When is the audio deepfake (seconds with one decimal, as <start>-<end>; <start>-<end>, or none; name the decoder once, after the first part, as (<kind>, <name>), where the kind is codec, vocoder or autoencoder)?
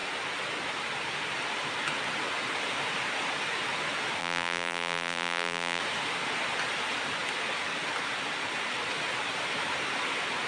4.2-5.8 (vocoder, BigVGAN v2)